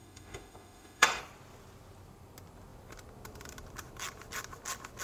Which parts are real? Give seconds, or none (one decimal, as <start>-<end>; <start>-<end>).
1.2-5.0